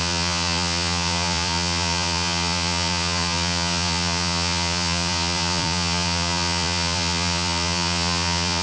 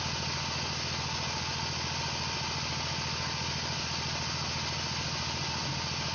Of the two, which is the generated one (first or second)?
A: first